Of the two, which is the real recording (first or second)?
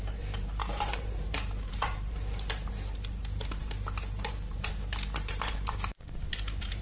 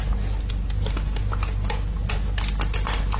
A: second